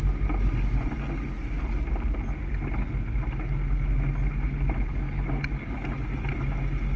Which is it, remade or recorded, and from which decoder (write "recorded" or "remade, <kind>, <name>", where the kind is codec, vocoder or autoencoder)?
recorded